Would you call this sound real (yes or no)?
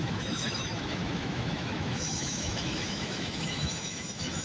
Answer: no